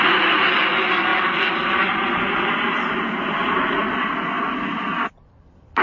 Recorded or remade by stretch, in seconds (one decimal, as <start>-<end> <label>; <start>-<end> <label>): 0.0-5.8 recorded

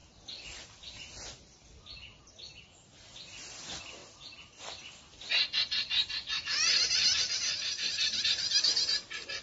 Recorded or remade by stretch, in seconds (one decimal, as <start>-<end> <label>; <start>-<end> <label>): 0.0-9.4 recorded